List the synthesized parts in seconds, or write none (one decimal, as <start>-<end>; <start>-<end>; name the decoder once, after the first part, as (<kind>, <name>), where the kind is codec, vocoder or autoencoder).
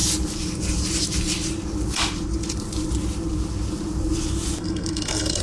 4.6-5.4 (codec, SNAC)